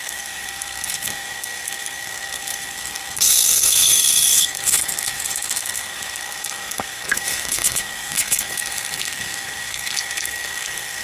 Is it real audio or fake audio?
fake